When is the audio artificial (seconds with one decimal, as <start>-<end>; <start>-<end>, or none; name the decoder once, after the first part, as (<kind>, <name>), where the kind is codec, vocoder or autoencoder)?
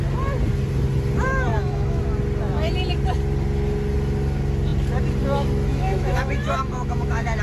1.5-2.0 (autoencoder, DAC-VAE); 5.7-7.4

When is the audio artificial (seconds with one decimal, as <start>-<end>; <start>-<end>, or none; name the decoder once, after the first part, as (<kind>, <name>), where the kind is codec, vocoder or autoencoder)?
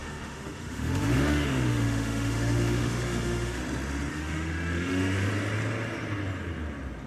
0.0-3.6 (autoencoder, DAC-VAE); 4.1-5.3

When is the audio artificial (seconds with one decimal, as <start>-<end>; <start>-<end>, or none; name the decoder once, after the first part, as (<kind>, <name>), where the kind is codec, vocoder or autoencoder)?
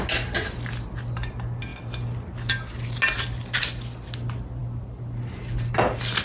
none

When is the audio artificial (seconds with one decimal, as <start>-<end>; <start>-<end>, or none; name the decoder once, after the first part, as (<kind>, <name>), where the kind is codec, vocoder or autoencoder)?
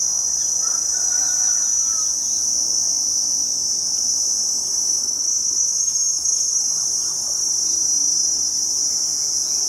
5.0-6.6 (autoencoder, DAC-VAE)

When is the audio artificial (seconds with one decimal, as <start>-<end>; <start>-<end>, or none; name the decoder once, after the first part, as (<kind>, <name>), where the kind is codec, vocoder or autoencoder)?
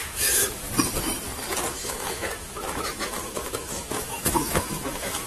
0.0-0.7 (autoencoder, DAC-VAE); 1.7-5.3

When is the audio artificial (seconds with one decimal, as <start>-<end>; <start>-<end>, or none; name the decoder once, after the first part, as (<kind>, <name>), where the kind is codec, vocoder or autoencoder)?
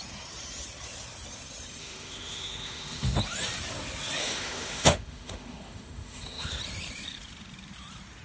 1.8-3.2 (autoencoder, DAC-VAE); 4.2-6.6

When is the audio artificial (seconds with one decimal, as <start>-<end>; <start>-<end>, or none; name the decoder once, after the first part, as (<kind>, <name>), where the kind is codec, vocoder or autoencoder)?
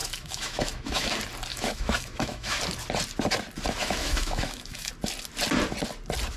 0.0-1.1 (autoencoder, DAC-VAE); 1.5-2.6; 3.8-4.9